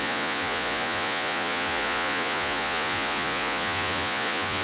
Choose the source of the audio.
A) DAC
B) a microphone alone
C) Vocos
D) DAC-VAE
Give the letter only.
C